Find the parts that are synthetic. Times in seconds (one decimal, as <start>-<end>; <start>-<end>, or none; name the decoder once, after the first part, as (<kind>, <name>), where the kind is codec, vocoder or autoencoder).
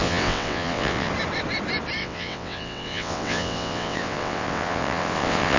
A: 0.0-1.1 (vocoder, WaveNeXt); 2.0-5.6